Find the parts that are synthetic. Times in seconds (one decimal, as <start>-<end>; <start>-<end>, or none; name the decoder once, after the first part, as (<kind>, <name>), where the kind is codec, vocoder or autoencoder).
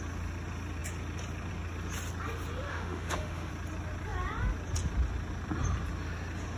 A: 2.7-3.5 (autoencoder, DAC-VAE)